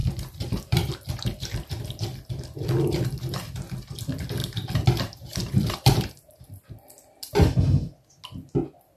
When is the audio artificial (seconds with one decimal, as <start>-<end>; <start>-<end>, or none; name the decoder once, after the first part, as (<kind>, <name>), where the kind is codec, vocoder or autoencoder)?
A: 0.0-0.9 (vocoder, BigVGAN v2); 4.4-6.4